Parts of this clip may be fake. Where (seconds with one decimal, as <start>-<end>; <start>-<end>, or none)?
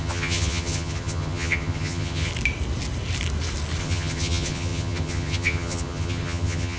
0.0-2.3; 3.8-6.8